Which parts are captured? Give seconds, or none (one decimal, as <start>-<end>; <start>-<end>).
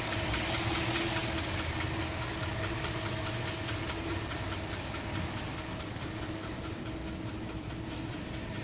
0.0-8.6